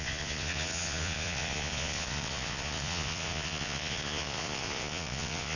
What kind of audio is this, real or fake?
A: fake